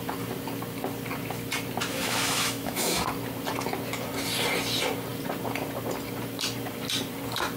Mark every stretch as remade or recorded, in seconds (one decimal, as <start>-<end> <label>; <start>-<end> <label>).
0.0-1.9 recorded; 1.9-3.0 remade; 3.0-7.6 recorded